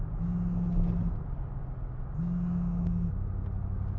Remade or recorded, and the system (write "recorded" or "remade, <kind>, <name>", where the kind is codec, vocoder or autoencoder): recorded